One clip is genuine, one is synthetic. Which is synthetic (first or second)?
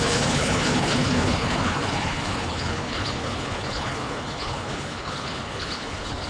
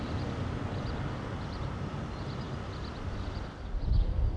first